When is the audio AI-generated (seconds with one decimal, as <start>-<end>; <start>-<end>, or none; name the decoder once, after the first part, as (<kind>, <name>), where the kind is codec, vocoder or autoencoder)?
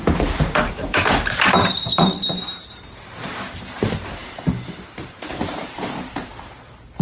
0.0-7.0 (vocoder, BigVGAN v2)